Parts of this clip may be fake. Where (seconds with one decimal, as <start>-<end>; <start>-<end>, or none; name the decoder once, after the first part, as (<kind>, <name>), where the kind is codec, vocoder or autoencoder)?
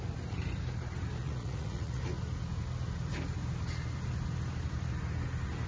1.2-2.0 (vocoder, Vocos)